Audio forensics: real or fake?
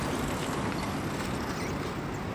real